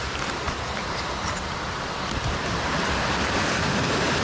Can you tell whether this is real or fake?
real